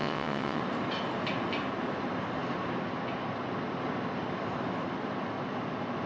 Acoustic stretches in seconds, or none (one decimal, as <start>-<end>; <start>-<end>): 0.6-6.1